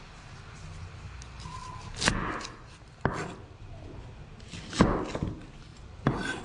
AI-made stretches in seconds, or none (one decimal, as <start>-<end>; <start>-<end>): 5.7-6.4